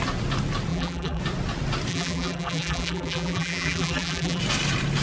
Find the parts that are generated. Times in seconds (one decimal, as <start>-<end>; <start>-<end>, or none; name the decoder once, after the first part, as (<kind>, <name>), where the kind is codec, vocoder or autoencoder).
0.7-1.2 (vocoder, BigVGAN v2); 1.9-4.4